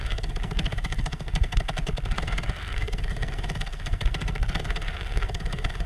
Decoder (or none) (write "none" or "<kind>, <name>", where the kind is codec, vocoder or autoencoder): codec, SNAC